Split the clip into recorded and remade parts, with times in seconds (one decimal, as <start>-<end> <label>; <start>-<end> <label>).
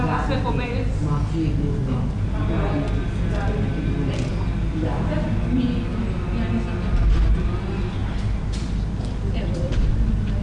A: 0.0-10.4 recorded